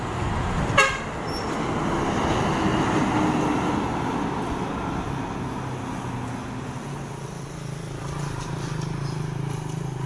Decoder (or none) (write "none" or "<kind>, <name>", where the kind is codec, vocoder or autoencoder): none